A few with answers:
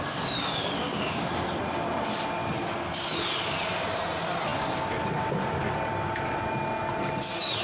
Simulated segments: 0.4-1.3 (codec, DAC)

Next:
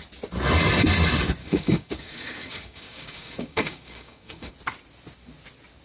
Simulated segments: 1.4-4.5 (codec, DAC)

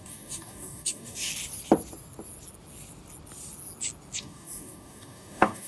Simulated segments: 0.0-1.3 (codec, DAC); 4.2-5.7

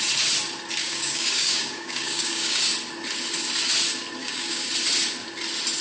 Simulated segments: 0.8-2.6 (codec, DAC); 4.2-4.7

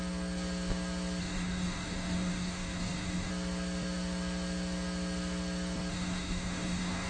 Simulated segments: 1.2-3.3 (codec, DAC); 5.9-7.1

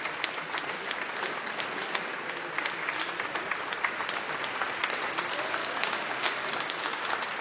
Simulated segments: 5.6-7.0 (codec, DAC)

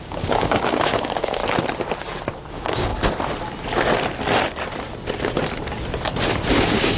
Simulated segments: 0.0-1.4 (codec, DAC); 2.5-2.9; 6.5-7.0